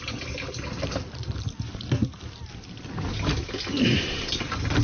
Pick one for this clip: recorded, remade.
recorded